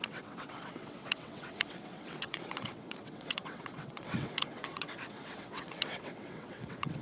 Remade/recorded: remade